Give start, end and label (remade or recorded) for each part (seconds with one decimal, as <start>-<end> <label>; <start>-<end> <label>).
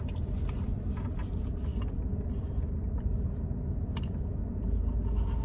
0.0-5.4 recorded